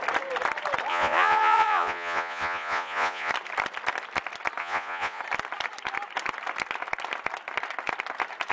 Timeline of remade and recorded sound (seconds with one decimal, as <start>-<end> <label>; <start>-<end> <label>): 0.0-0.9 recorded; 0.9-3.3 remade; 3.3-4.6 recorded; 4.6-5.2 remade; 5.2-8.5 recorded